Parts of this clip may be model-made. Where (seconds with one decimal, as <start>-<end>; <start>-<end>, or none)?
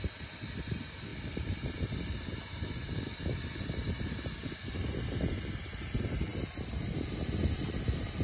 0.0-8.2